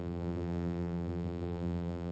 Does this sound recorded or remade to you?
remade